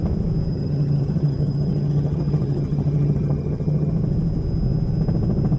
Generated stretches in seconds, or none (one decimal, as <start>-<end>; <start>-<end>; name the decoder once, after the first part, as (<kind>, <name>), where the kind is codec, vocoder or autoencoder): 0.5-3.9 (vocoder, HiFi-GAN)